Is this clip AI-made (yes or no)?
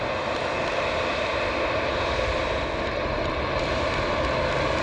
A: no